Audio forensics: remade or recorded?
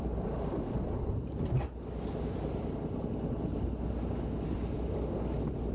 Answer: recorded